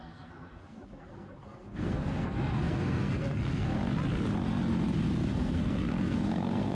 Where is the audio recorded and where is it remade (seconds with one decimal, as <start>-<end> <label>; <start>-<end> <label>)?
0.0-3.8 remade; 3.8-5.3 recorded; 5.3-6.7 remade

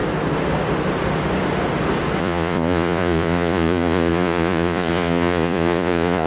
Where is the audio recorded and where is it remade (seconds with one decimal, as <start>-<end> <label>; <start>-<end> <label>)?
0.0-2.2 recorded; 2.2-6.3 remade

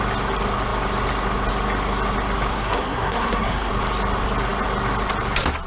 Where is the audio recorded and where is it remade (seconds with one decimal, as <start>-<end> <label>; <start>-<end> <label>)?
0.0-2.5 recorded; 2.5-3.7 remade; 3.7-5.7 recorded